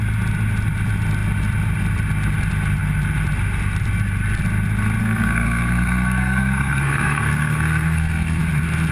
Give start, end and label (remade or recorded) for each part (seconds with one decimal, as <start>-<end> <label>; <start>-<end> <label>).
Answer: 0.0-5.0 recorded; 5.0-8.4 remade; 8.4-8.9 recorded